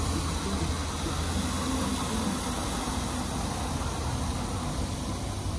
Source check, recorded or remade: recorded